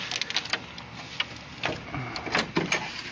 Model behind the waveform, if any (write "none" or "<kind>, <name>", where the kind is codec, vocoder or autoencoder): none